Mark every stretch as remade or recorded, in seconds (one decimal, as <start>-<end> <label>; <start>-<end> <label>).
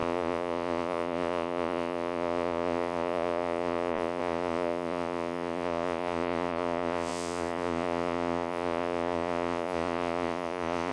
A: 0.0-10.9 remade